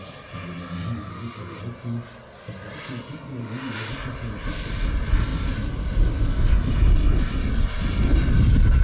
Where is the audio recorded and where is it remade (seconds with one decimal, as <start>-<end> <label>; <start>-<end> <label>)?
0.0-1.1 recorded; 1.1-1.6 remade; 1.6-3.4 recorded; 3.4-3.9 remade; 3.9-8.8 recorded